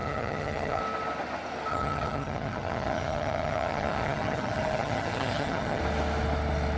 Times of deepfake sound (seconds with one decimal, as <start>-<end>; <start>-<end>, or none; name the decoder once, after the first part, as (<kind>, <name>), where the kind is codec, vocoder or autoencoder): 0.0-0.8 (vocoder, HiFi-GAN); 1.7-5.8